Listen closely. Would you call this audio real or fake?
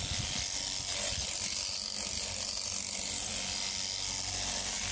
real